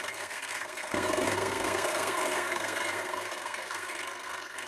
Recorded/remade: remade